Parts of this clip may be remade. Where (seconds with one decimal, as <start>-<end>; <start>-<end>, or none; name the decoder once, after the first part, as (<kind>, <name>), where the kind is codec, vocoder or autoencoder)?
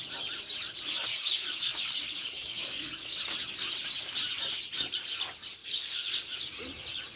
1.1-3.2 (codec, DAC); 5.6-6.5